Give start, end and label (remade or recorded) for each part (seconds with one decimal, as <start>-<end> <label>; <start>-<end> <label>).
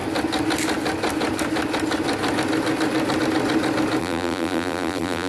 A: 0.0-4.0 recorded; 4.0-5.3 remade